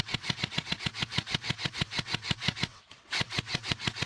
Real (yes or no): no